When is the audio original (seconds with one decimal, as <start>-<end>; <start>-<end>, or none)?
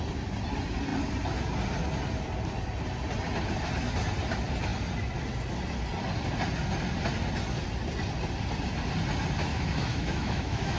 0.0-9.5